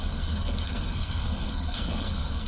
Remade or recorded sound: remade